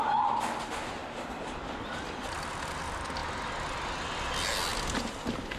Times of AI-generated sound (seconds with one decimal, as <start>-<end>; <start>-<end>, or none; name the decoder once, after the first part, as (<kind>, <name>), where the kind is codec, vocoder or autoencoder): none